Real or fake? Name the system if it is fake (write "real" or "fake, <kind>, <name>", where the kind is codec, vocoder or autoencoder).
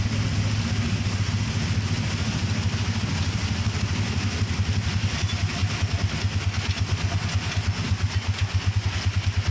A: real